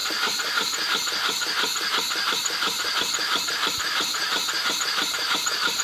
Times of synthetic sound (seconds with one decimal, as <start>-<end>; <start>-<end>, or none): 3.5-4.1; 4.8-5.8